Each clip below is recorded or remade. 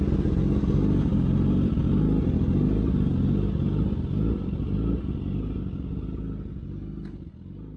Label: recorded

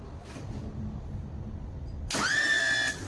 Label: recorded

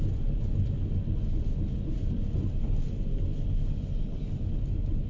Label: recorded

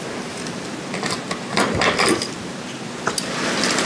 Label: recorded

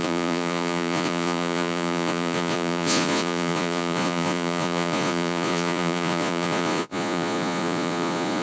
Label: remade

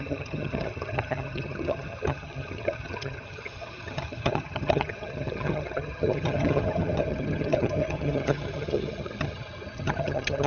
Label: remade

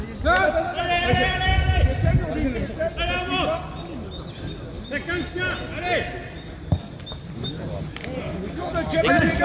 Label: recorded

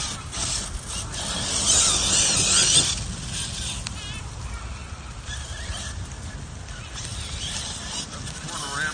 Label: recorded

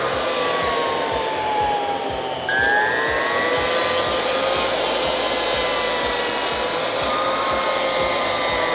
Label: recorded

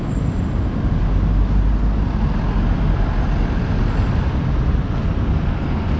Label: recorded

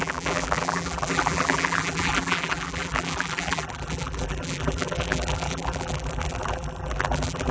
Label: remade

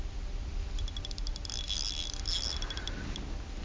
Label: recorded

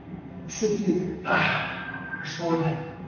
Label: remade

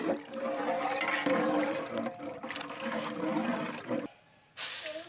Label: recorded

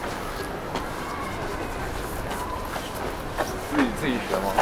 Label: recorded